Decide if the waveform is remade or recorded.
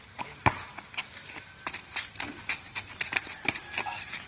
recorded